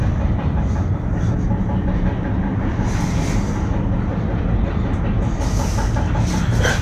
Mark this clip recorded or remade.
recorded